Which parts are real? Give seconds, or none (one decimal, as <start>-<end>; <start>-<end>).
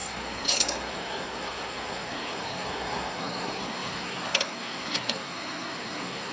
none